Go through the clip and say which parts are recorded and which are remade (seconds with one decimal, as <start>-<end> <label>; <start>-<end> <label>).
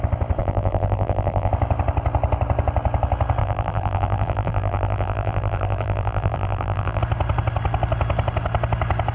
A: 0.0-0.4 recorded; 0.4-1.5 remade; 1.5-3.4 recorded; 3.4-7.0 remade; 7.0-9.1 recorded